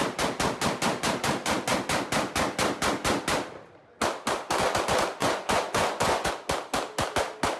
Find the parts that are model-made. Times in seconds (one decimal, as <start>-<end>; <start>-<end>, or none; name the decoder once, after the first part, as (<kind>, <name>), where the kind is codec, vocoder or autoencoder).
5.2-6.3 (vocoder, Vocos)